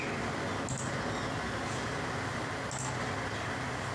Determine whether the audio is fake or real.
real